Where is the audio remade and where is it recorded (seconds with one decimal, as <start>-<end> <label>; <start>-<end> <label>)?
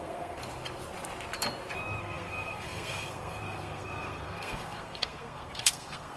0.0-0.4 remade; 0.4-2.0 recorded; 2.0-6.2 remade